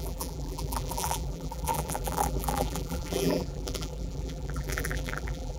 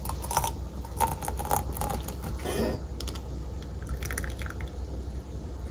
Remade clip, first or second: first